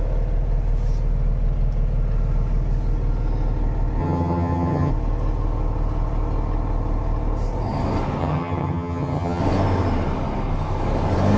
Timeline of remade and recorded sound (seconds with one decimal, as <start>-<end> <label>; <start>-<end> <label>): 0.0-4.0 recorded; 4.0-4.9 remade; 4.9-8.2 recorded; 8.2-9.4 remade; 9.4-11.4 recorded